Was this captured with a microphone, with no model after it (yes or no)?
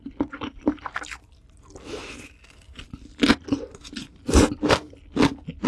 yes